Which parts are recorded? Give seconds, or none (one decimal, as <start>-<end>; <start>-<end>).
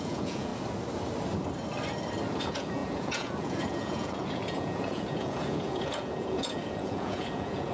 0.5-2.4